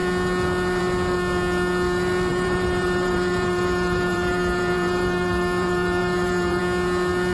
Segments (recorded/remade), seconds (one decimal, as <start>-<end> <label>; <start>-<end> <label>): 0.0-2.3 recorded; 2.3-6.6 remade; 6.6-7.3 recorded